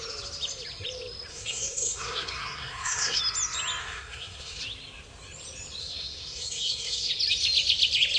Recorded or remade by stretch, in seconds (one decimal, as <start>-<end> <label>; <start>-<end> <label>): 0.0-1.3 recorded; 1.3-3.2 remade; 3.2-3.8 recorded; 3.8-4.6 remade; 4.6-5.8 recorded; 5.8-7.1 remade; 7.1-8.2 recorded